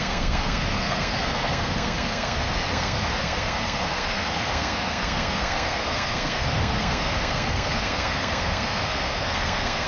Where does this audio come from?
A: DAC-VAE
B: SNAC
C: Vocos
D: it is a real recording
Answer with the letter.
B